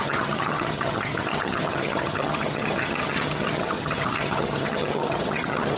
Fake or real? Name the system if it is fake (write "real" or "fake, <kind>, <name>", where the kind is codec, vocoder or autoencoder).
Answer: fake, vocoder, HiFi-GAN